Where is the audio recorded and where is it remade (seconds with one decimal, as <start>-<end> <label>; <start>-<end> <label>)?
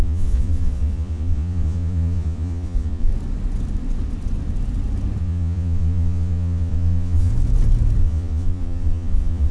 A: 0.0-3.1 remade; 3.1-5.2 recorded; 5.2-7.3 remade; 7.3-8.0 recorded; 8.0-9.5 remade